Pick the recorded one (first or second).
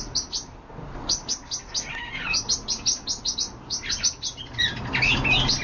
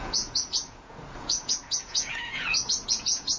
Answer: first